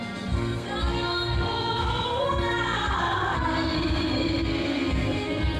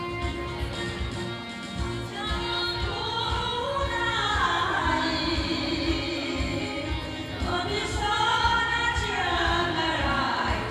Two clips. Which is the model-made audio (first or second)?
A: first